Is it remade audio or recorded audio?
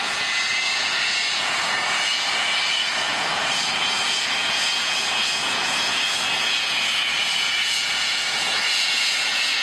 remade